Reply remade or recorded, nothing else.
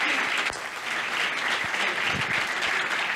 recorded